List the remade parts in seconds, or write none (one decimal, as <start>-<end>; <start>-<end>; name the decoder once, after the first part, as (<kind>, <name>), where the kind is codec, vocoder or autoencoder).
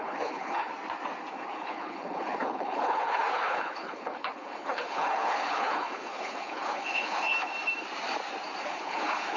0.0-0.7 (codec, HILCodec); 1.3-7.5; 8.6-9.4